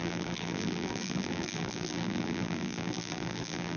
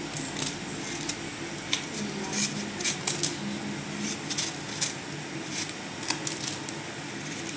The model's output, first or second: first